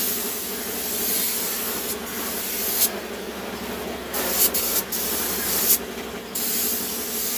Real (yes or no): yes